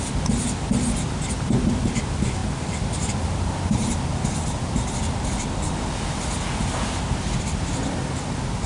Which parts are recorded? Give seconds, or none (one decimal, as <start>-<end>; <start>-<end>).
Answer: 0.0-2.4; 3.5-8.7